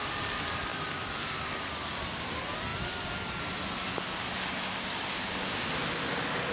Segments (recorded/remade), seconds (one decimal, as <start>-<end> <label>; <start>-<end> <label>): 0.0-6.5 recorded